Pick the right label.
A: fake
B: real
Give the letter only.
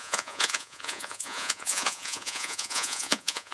A